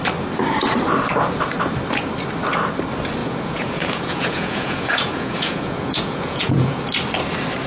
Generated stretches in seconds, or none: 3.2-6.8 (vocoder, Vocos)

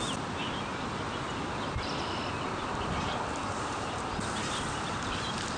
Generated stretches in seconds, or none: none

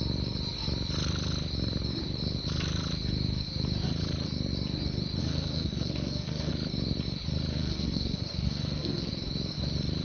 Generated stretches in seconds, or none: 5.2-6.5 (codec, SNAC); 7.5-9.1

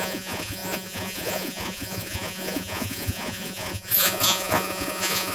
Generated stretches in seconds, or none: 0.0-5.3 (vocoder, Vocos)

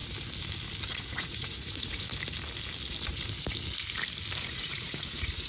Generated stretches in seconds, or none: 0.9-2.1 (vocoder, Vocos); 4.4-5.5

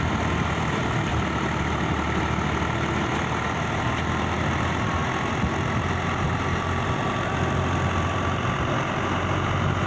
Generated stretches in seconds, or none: none

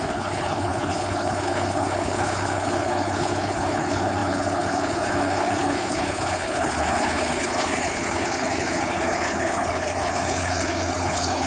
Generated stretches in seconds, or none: 0.0-11.5 (codec, HILCodec)

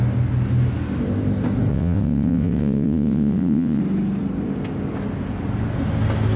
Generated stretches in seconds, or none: 1.7-3.8 (vocoder, WaveNeXt)